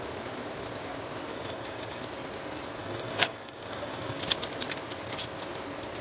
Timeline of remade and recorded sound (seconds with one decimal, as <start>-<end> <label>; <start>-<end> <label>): 0.0-1.3 recorded; 1.3-2.0 remade; 2.0-2.8 recorded; 2.8-4.2 remade; 4.2-6.0 recorded

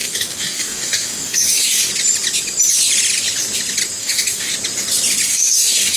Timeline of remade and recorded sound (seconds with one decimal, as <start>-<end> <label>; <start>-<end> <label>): 0.0-1.9 remade; 1.9-4.0 recorded; 4.0-4.5 remade; 4.5-5.3 recorded; 5.3-6.0 remade

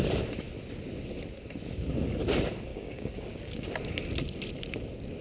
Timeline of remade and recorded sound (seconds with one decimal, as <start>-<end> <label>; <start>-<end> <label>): 0.0-2.7 recorded; 2.7-3.7 remade; 3.7-5.2 recorded

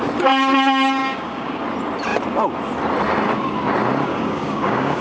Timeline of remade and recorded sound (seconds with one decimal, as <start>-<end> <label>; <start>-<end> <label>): 0.0-1.0 recorded; 1.0-1.6 remade; 1.6-4.1 recorded; 4.1-5.0 remade

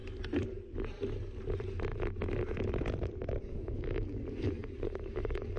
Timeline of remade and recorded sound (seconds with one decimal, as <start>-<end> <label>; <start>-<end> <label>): 0.0-3.4 recorded; 3.4-5.6 remade

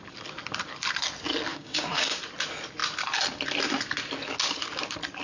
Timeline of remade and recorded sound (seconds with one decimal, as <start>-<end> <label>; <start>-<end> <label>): 0.0-1.5 recorded; 1.5-2.2 remade; 2.2-5.2 recorded

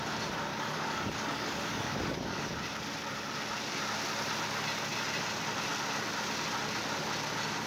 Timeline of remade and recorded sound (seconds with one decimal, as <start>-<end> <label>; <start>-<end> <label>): 0.0-0.5 recorded; 0.5-2.5 remade; 2.5-7.7 recorded

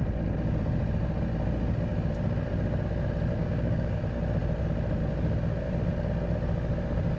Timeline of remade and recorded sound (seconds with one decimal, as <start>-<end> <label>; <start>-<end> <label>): 0.0-3.4 recorded; 3.4-4.0 remade; 4.0-7.2 recorded